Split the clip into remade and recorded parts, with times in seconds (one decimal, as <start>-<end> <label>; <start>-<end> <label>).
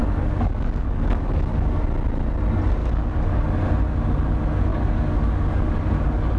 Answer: 0.0-1.8 remade; 1.8-2.8 recorded; 2.8-3.4 remade; 3.4-4.7 recorded; 4.7-5.8 remade; 5.8-6.4 recorded